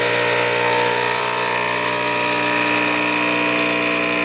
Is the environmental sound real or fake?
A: real